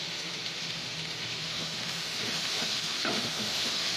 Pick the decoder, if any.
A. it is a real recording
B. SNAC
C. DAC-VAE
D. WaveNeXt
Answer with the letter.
C